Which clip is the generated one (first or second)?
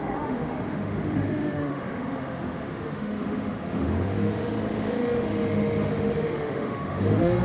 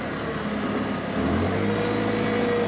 first